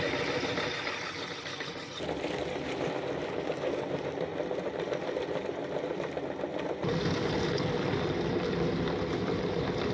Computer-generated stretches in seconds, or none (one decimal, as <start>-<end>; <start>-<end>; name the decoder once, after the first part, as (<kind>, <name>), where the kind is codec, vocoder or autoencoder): none